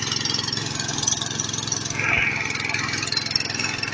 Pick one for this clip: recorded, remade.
recorded